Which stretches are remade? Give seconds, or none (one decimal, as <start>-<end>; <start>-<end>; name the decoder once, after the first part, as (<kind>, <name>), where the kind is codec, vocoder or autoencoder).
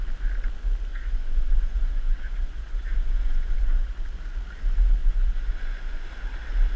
0.9-4.0 (vocoder, Vocos); 5.0-6.1